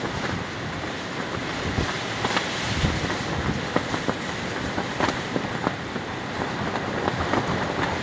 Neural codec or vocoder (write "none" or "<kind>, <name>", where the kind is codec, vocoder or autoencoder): none